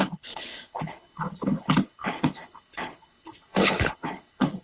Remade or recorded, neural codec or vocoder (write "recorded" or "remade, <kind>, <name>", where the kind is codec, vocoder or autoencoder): remade, codec, HILCodec